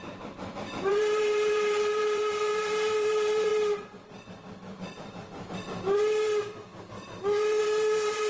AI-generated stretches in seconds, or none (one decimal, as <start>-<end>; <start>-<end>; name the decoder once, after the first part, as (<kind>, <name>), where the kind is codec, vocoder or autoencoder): 0.0-3.5 (vocoder, BigVGAN v2); 7.6-8.3